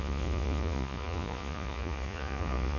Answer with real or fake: fake